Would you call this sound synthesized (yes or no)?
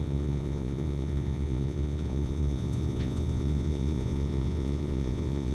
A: yes